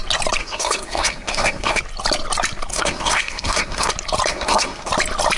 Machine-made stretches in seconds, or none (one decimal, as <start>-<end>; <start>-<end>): 0.4-1.8; 2.7-3.9; 4.3-4.9